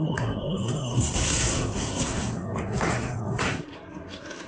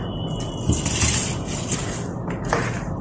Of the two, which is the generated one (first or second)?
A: first